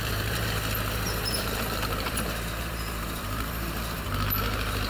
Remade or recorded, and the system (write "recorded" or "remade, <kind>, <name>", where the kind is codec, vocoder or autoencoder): remade, vocoder, BigVGAN v2